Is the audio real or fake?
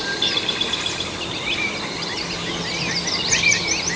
real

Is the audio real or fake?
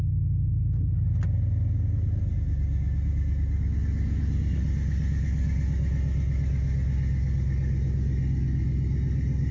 real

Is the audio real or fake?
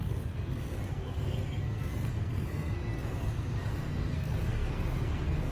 fake